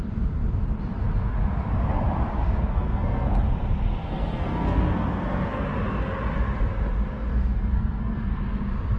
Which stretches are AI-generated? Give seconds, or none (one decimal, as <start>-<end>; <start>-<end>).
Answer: 2.4-3.3; 4.0-5.6; 7.3-8.4